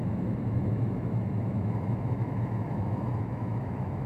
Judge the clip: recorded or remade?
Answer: remade